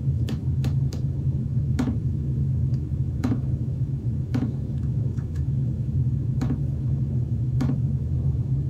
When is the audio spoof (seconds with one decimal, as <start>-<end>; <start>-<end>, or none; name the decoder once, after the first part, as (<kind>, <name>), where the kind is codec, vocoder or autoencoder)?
0.0-8.7 (autoencoder, DAC-VAE)